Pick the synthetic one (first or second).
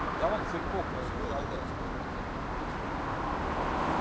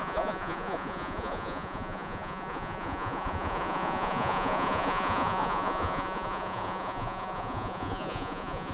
second